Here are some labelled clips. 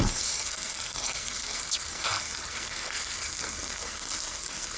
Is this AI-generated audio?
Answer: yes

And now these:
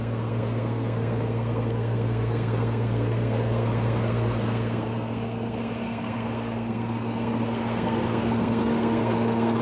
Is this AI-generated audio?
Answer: yes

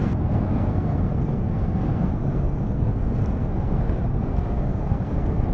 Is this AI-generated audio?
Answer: yes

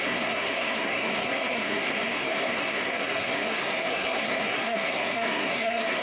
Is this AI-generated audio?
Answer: yes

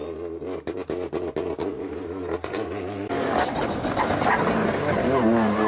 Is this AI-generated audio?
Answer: no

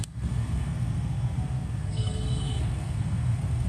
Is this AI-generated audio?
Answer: yes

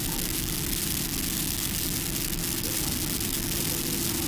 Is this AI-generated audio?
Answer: no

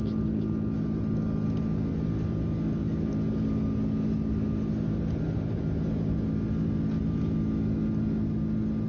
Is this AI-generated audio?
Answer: no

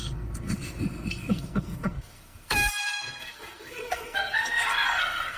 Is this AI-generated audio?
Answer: yes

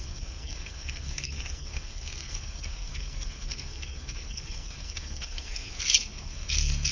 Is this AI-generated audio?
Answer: yes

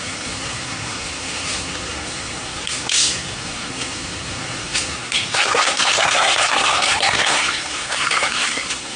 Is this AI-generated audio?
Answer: yes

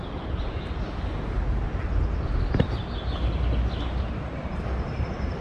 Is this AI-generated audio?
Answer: no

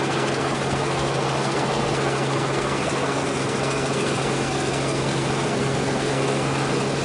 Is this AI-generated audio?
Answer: yes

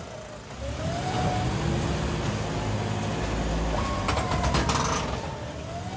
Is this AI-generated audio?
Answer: no